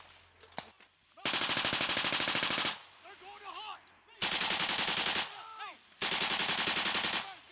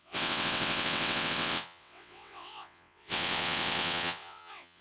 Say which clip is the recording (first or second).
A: first